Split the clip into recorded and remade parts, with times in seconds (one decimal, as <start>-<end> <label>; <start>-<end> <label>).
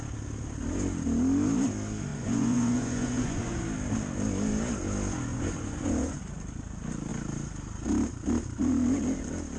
0.0-2.1 recorded; 2.1-3.6 remade; 3.6-5.3 recorded; 5.3-6.2 remade; 6.2-9.6 recorded